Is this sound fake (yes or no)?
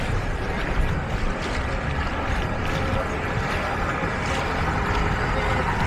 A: no